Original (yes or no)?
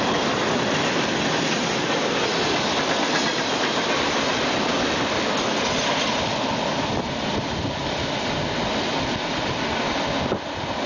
yes